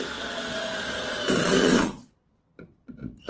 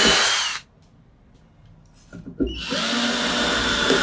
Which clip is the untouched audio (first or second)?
second